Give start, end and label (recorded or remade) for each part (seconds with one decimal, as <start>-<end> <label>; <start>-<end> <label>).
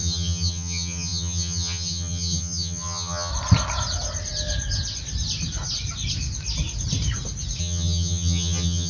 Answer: 0.0-3.3 remade; 3.3-7.6 recorded; 7.6-8.9 remade